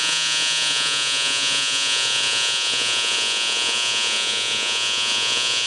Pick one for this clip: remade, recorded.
remade